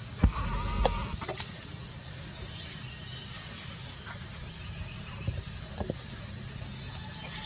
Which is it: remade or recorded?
recorded